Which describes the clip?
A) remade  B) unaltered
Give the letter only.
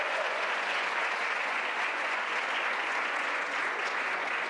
A